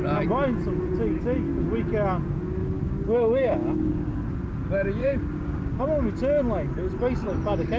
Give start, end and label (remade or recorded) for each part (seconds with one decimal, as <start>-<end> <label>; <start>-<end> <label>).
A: 0.0-2.6 recorded; 2.6-4.2 remade; 4.2-5.0 recorded; 5.0-5.8 remade; 5.8-7.8 recorded